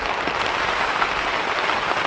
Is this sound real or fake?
real